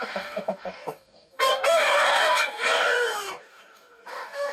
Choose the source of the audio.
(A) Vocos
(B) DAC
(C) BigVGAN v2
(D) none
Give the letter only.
B